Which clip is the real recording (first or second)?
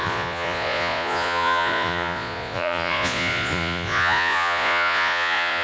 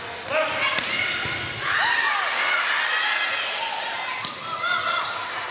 second